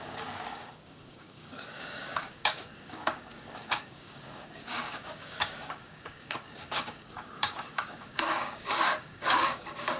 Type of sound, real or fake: fake